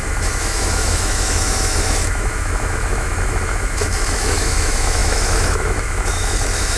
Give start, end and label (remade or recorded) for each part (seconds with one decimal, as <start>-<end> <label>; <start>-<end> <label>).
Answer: 0.0-6.8 remade

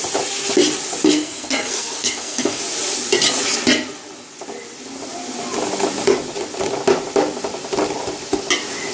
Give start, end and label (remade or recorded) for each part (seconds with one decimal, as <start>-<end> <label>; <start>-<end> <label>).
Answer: 0.0-1.1 recorded; 1.1-2.6 remade; 2.6-8.9 recorded

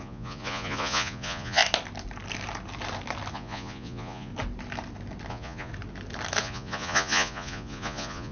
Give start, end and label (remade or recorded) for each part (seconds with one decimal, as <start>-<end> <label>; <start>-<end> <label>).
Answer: 0.0-1.6 remade; 1.6-3.3 recorded; 3.3-4.3 remade; 4.3-5.3 recorded; 5.3-5.7 remade; 5.7-6.4 recorded; 6.4-8.3 remade